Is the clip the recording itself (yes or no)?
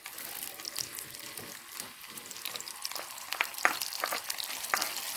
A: yes